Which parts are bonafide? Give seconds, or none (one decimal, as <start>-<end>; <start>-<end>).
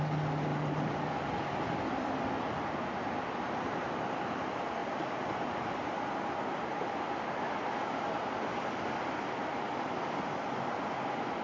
0.0-0.5; 1.1-4.8; 5.9-11.4